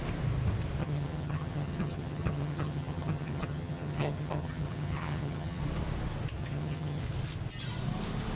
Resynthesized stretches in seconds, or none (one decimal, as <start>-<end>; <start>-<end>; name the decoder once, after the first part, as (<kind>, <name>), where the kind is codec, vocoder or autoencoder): 0.8-5.6 (vocoder, HiFi-GAN); 6.4-7.0